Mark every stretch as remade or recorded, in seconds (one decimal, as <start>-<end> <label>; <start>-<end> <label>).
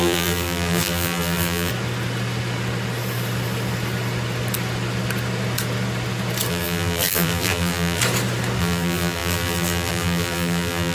0.0-1.7 remade; 1.7-6.5 recorded; 6.5-8.0 remade; 8.0-8.6 recorded; 8.6-10.9 remade